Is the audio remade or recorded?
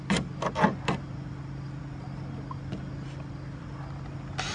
recorded